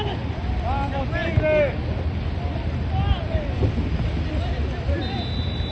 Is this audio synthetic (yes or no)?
no